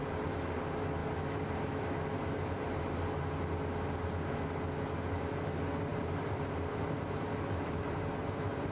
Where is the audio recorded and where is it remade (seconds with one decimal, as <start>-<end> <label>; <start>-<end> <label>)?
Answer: 0.0-5.9 recorded; 5.9-8.7 remade